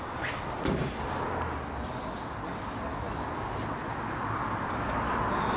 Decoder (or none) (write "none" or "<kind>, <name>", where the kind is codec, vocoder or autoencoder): none